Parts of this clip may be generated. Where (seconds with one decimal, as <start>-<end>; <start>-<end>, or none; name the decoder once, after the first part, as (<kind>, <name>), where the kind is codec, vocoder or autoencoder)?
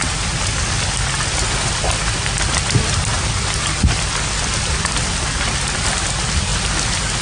none